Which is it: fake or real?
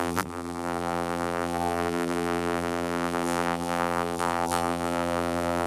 fake